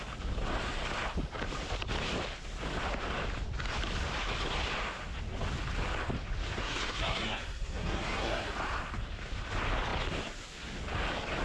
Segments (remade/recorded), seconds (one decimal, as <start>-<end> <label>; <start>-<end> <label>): 0.0-6.6 recorded; 6.6-8.5 remade; 8.5-11.4 recorded